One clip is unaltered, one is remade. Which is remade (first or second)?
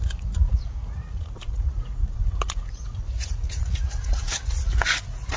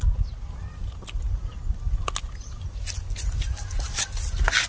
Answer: first